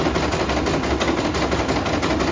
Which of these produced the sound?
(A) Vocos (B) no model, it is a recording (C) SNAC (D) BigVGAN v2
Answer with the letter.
B